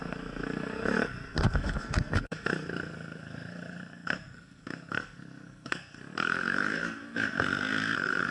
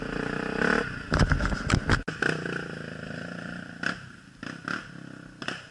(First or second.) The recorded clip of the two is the second